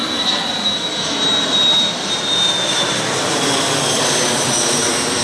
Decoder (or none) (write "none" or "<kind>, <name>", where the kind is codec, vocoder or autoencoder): none